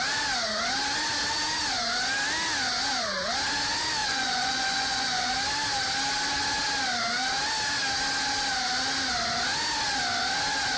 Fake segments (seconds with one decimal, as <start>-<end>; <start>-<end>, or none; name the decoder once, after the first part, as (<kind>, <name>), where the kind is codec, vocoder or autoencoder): 4.0-5.3 (vocoder, Vocos)